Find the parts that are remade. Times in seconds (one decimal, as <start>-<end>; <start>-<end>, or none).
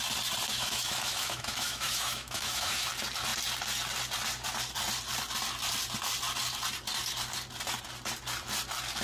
0.5-2.9